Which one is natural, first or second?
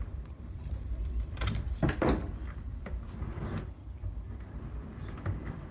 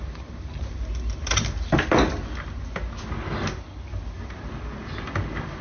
second